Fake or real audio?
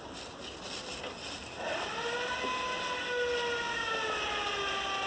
real